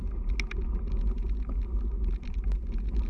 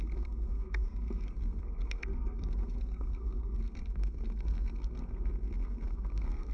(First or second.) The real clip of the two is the first